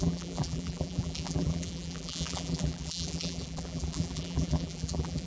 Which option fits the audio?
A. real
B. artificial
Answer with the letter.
B